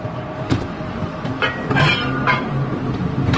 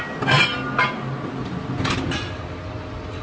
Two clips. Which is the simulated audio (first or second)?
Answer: first